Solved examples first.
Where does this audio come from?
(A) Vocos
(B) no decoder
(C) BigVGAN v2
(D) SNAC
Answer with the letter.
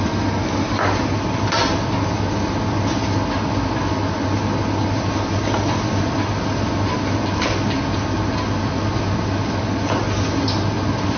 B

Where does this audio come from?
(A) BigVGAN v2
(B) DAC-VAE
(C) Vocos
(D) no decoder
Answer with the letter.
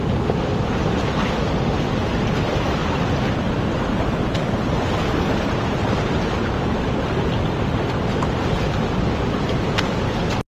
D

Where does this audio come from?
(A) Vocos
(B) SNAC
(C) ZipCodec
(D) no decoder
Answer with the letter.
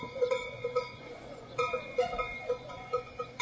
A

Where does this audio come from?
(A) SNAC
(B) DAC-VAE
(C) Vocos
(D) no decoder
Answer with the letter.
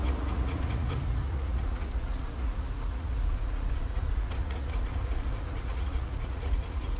C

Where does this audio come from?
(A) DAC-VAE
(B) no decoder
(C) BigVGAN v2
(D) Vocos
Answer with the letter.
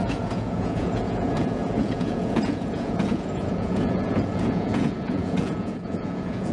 D